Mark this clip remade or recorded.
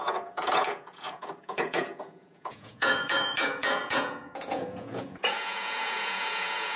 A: remade